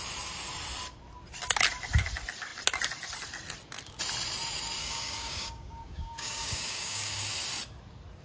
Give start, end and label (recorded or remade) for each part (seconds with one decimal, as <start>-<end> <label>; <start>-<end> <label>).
0.0-4.8 recorded; 4.8-7.2 remade; 7.2-8.2 recorded